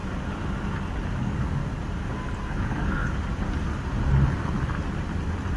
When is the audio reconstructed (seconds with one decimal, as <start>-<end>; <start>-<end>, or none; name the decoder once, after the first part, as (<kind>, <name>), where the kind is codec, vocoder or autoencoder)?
1.2-1.6 (codec, DAC); 2.6-3.0